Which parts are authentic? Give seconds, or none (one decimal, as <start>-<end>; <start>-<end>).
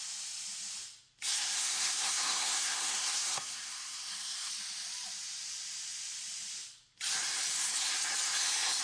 0.0-1.3; 4.5-8.8